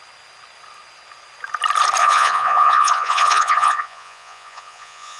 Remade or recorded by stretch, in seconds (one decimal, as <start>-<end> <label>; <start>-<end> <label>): 0.0-2.0 recorded; 2.0-5.2 remade